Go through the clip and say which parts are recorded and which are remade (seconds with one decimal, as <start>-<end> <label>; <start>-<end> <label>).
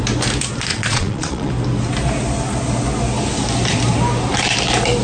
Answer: 0.0-0.7 recorded; 0.7-1.5 remade; 1.5-5.0 recorded